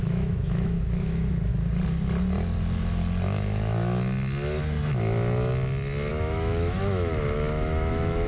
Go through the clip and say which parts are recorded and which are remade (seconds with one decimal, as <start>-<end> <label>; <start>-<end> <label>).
0.0-1.5 remade; 1.5-6.1 recorded; 6.1-8.3 remade